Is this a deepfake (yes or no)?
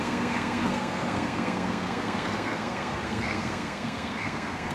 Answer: yes